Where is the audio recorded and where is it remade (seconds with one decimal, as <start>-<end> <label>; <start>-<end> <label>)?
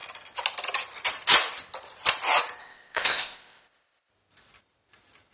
0.0-2.6 recorded; 2.6-4.1 remade; 4.1-5.3 recorded